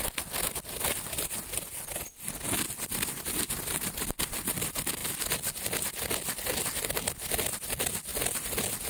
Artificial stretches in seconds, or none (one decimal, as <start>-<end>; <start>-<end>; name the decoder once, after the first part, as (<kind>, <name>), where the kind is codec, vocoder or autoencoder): none